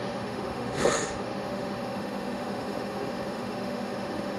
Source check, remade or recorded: remade